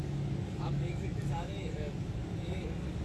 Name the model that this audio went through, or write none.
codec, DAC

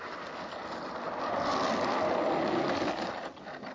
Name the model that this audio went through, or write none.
none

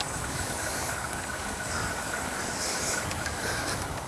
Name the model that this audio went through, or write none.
codec, DAC